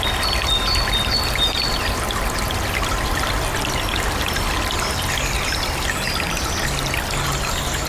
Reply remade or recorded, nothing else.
recorded